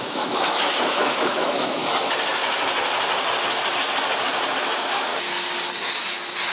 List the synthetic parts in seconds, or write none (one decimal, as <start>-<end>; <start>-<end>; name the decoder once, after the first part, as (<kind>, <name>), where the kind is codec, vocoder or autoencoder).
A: 0.0-1.8 (autoencoder, DAC-VAE); 4.6-5.1

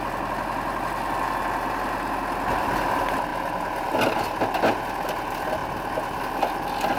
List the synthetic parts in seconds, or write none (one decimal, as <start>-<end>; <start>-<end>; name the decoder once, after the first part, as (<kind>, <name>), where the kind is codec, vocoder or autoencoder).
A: none

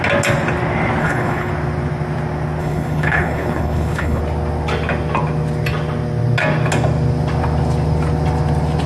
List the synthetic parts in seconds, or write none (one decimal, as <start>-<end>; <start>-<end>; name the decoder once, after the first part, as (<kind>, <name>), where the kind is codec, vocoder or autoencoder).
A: 1.0-1.5 (codec, HILCodec); 2.6-4.2